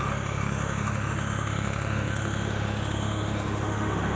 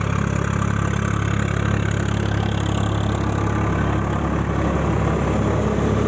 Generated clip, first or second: first